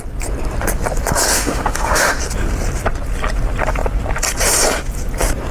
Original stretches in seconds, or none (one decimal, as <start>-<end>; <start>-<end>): 0.0-1.3; 2.2-5.5